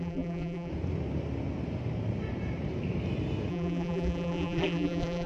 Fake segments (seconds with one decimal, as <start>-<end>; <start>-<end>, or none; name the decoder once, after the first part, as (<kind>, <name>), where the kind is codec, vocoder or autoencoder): 0.0-0.7 (vocoder, BigVGAN v2); 3.5-5.3